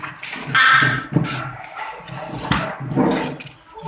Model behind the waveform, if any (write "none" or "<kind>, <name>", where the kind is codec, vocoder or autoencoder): none